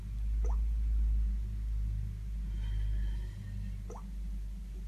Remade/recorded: recorded